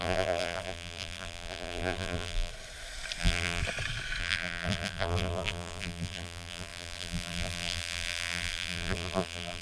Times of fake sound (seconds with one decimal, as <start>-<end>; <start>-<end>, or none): 0.0-2.5; 3.2-3.6; 4.2-9.6

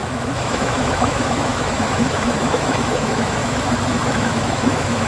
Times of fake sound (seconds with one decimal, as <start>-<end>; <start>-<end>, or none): 0.0-5.1

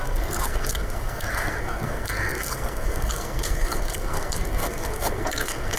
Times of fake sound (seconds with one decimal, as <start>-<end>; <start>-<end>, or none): 0.0-5.8

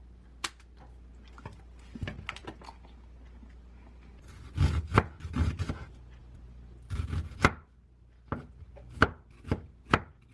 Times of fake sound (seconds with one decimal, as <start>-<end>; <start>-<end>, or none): none